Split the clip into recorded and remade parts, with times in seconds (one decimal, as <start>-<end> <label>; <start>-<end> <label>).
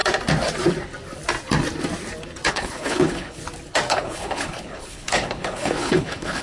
0.0-2.5 recorded; 2.5-3.4 remade; 3.4-3.9 recorded; 3.9-6.4 remade